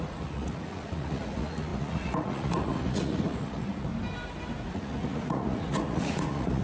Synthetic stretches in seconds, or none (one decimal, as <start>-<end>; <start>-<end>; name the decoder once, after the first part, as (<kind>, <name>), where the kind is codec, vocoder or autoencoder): 0.0-3.9 (vocoder, Vocos); 4.7-6.6